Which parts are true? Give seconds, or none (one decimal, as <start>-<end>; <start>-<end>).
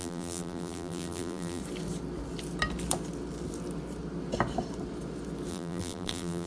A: 1.6-5.5